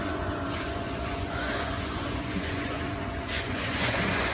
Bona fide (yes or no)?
no